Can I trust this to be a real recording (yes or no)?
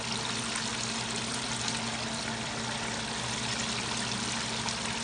yes